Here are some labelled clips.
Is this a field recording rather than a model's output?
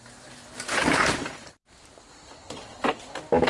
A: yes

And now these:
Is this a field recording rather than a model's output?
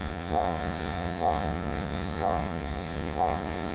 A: no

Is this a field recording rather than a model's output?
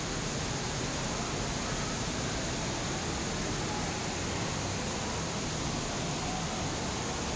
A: yes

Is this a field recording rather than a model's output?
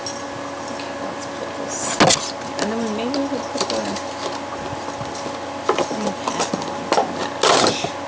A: yes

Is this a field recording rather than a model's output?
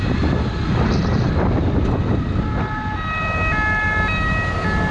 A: yes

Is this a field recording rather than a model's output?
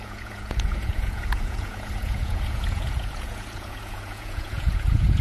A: no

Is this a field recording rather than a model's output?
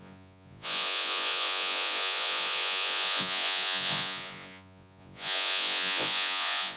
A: no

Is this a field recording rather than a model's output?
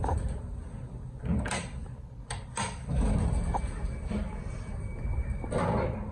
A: yes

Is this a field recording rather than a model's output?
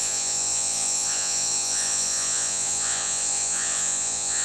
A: no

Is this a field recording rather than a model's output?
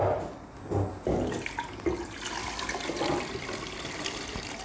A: yes